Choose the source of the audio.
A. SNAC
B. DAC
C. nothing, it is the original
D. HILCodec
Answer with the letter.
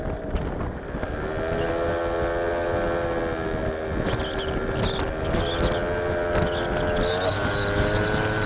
C